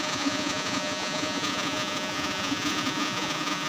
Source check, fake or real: fake